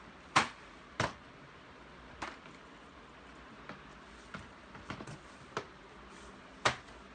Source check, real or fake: real